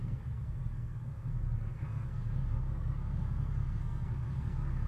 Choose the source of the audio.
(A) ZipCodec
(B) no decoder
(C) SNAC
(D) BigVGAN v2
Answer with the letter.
C